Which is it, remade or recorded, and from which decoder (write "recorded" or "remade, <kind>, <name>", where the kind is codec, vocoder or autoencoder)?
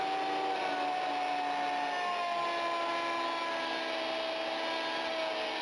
recorded